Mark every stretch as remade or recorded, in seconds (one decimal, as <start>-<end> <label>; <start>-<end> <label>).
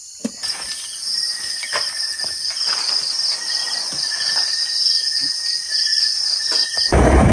0.0-3.6 recorded; 3.6-4.6 remade; 4.6-5.9 recorded; 5.9-7.3 remade